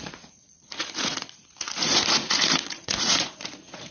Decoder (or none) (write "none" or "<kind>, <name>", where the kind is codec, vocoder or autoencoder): vocoder, Vocos